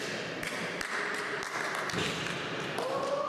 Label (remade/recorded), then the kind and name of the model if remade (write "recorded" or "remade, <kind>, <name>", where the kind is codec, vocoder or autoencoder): recorded